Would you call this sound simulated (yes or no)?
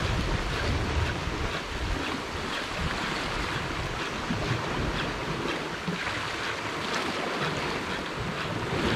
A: no